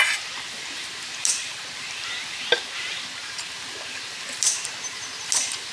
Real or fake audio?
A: real